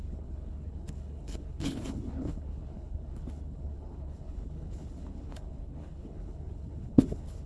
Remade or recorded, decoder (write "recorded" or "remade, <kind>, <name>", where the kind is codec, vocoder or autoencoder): remade, codec, HILCodec